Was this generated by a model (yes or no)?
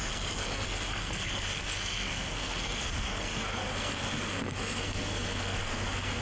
yes